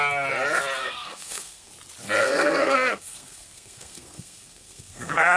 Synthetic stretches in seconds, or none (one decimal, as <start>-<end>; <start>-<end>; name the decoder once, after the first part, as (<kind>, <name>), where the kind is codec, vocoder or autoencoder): 0.8-1.7 (codec, SNAC); 2.2-5.4